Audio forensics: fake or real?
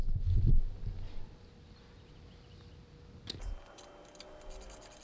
real